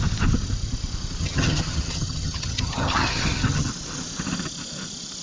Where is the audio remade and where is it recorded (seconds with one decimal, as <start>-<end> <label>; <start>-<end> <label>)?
0.0-1.2 recorded; 1.2-3.7 remade; 3.7-5.2 recorded